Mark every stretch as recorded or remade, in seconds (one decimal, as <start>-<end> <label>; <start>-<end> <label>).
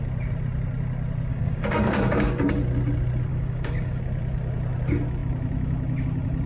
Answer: 0.0-1.3 recorded; 1.3-2.4 remade; 2.4-3.3 recorded; 3.3-4.0 remade; 4.0-6.5 recorded